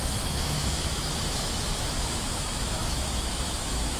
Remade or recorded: remade